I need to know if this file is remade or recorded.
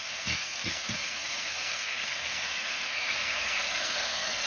remade